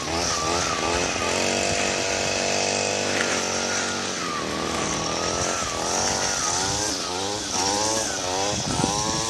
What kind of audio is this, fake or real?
real